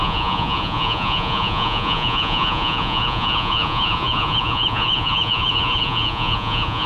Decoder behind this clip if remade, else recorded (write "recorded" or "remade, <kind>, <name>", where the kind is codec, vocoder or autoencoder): remade, vocoder, Vocos